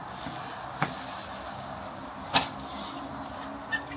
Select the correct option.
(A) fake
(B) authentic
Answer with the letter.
B